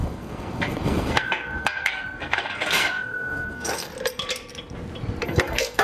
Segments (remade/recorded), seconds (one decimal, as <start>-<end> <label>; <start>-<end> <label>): 0.0-3.9 remade; 3.9-5.2 recorded; 5.2-5.8 remade